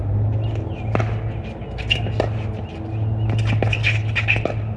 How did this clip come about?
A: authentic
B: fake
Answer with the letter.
A